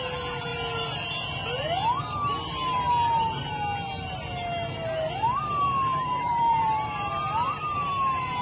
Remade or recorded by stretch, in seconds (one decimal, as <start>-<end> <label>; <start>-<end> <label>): 0.0-5.9 recorded; 5.9-7.6 remade; 7.6-8.4 recorded